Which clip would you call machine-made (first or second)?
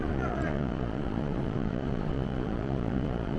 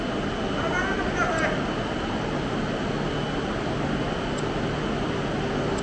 first